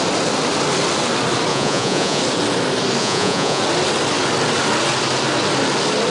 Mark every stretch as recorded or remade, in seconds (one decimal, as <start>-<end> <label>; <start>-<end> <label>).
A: 0.0-1.5 recorded; 1.5-2.2 remade; 2.2-3.0 recorded; 3.0-3.6 remade; 3.6-6.1 recorded